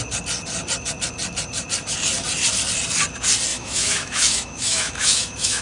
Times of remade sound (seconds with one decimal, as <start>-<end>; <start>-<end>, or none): 3.5-5.6